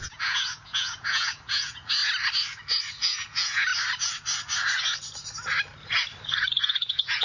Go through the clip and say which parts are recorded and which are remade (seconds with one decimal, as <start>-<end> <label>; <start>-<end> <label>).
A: 0.0-2.0 remade; 2.0-3.0 recorded; 3.0-3.7 remade; 3.7-6.6 recorded; 6.6-7.2 remade